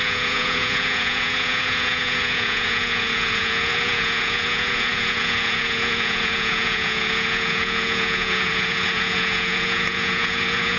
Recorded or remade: remade